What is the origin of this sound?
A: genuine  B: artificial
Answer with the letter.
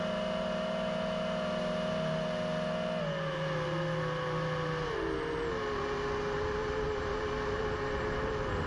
A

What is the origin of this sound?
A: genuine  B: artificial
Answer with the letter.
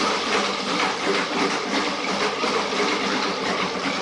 A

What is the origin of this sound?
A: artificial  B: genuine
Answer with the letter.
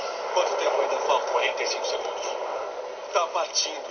B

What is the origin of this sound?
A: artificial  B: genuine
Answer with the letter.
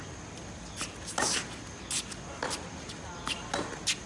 B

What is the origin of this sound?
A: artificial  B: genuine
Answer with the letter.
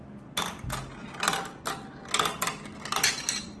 B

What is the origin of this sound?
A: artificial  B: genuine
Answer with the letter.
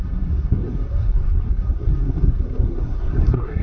A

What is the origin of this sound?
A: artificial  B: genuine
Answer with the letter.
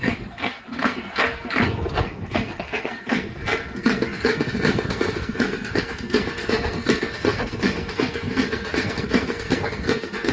A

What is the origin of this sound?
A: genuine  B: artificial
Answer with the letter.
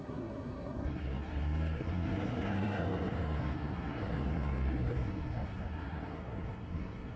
B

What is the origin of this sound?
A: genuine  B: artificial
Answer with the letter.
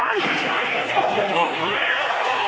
B